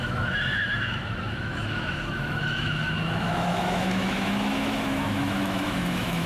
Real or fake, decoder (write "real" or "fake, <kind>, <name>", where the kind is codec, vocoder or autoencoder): fake, autoencoder, DAC-VAE